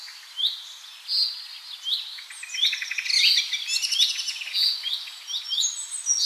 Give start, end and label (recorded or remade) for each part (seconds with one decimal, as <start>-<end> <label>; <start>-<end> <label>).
0.0-6.3 recorded